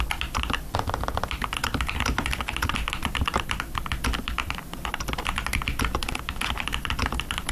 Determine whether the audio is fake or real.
real